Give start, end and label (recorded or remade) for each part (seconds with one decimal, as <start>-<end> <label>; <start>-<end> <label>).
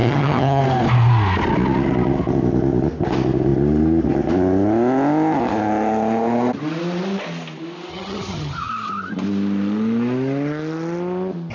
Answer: 0.0-0.6 remade; 0.6-7.9 recorded; 7.9-8.7 remade; 8.7-11.5 recorded